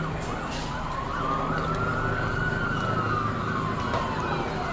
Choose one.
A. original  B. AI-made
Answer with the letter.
A